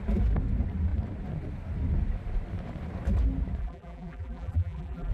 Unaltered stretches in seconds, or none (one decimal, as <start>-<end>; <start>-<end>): 0.0-3.6